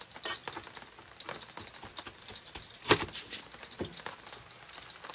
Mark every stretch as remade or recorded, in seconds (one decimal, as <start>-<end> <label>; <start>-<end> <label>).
0.0-5.1 recorded